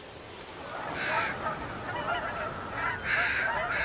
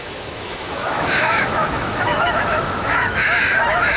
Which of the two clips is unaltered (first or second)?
first